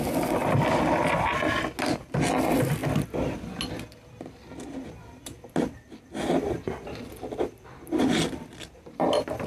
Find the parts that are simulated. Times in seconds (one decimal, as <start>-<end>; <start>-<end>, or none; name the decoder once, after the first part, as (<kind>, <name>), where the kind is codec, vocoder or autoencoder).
none